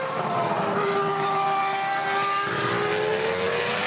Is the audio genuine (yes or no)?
yes